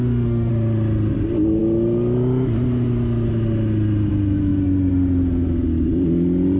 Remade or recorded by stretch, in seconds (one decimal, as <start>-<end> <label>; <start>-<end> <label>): 0.0-0.5 remade; 0.5-6.6 recorded